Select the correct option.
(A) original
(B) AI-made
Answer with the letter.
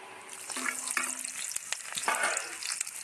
A